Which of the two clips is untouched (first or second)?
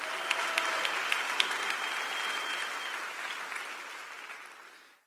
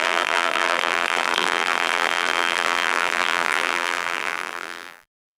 first